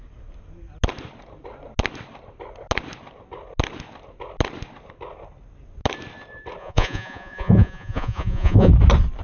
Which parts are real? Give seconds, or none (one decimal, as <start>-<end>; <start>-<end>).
0.0-6.6; 8.7-9.2